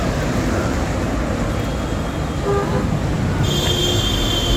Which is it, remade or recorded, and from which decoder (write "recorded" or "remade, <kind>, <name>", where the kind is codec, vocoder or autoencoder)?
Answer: recorded